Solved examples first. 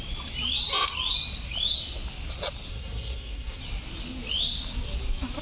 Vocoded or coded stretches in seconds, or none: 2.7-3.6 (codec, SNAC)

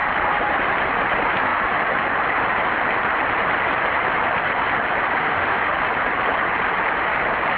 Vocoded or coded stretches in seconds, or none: 5.2-5.8 (autoencoder, DAC-VAE)

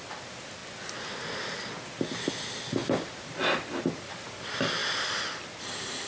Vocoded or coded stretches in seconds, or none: none

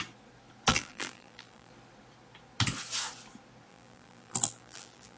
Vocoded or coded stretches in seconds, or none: 0.7-1.7 (vocoder, BigVGAN v2); 3.7-5.2

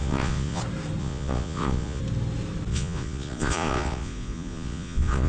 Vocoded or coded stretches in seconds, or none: 0.0-0.6 (vocoder, Vocos); 1.0-2.0; 2.7-5.3

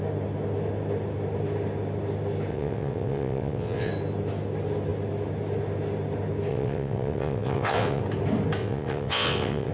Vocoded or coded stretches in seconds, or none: 2.5-3.9 (vocoder, WaveNeXt); 6.5-8.0; 8.6-9.7